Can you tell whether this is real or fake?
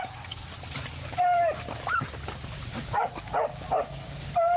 real